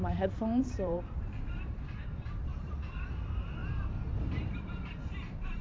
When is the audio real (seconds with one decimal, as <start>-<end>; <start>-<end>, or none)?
3.6-4.5